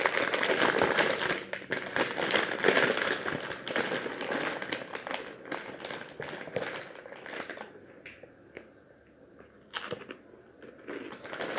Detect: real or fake real